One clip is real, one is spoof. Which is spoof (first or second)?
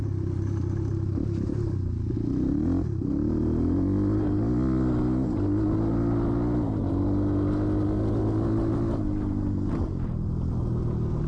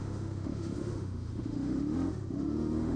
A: second